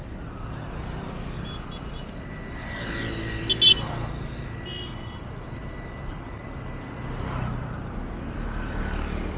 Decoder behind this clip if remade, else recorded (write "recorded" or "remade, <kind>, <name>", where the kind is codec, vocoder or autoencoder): recorded